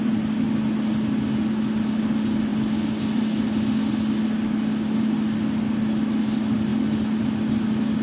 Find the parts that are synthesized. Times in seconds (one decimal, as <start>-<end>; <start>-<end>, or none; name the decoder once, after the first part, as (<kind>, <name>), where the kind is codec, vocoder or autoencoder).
none